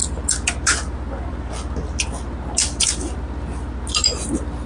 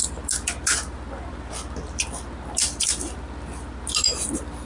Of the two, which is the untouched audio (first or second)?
first